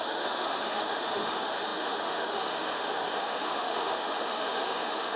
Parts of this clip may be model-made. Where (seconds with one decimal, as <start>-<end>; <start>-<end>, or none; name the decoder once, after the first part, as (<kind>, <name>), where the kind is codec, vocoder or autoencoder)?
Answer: 0.0-5.2 (autoencoder, DAC-VAE)